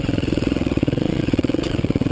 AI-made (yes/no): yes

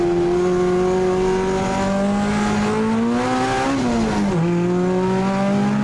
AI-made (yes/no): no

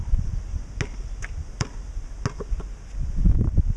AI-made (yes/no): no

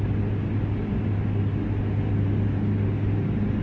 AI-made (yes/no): no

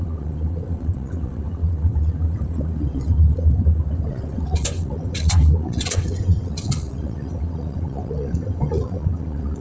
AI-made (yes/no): yes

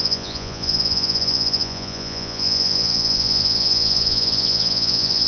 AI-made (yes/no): yes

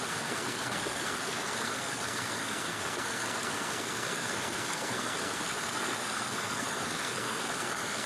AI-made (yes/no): yes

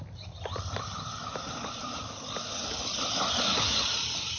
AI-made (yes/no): no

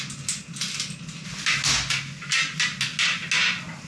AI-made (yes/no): no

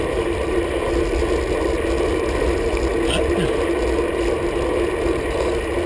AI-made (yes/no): no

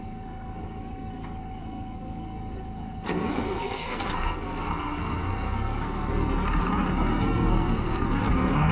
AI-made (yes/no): yes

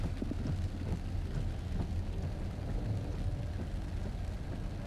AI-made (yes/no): no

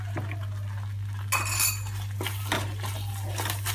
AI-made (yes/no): no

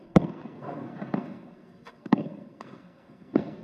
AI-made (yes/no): yes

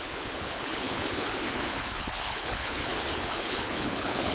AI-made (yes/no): yes